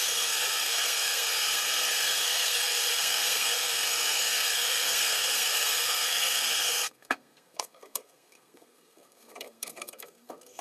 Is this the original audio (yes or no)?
no